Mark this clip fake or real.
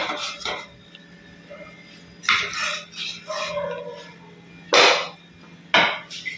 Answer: real